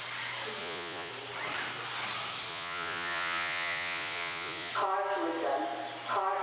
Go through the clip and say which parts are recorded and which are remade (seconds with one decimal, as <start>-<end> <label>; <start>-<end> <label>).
0.0-0.6 recorded; 0.6-1.1 remade; 1.1-2.5 recorded; 2.5-4.7 remade; 4.7-6.4 recorded